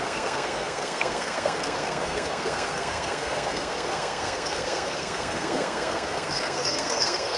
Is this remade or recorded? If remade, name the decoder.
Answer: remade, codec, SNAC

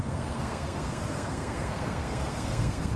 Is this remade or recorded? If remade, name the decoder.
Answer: remade, codec, SNAC